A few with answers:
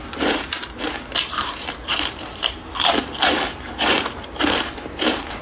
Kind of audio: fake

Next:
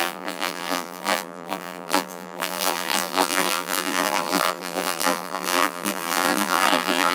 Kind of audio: fake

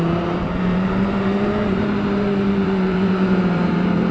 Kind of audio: fake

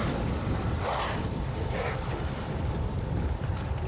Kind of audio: fake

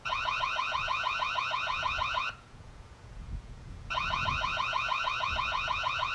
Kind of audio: fake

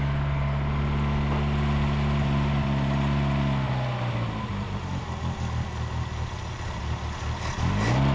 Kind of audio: real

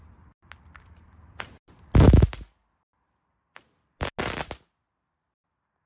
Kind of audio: real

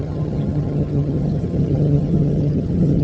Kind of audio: fake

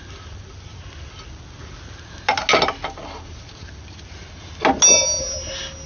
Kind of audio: real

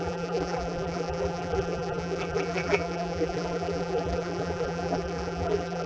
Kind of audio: fake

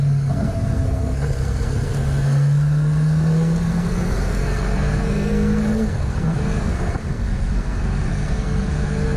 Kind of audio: fake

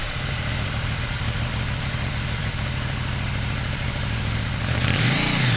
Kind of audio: fake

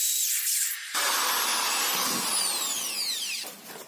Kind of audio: fake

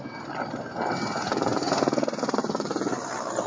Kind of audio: real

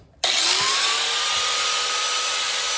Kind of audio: real